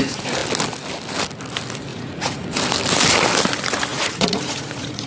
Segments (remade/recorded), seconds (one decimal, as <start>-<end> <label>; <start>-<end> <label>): 0.0-1.9 recorded; 1.9-2.6 remade; 2.6-3.9 recorded; 3.9-5.1 remade